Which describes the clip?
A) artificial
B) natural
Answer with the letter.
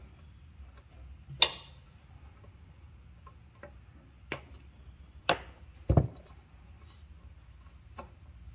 B